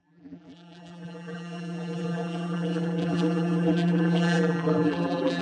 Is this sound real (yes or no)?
no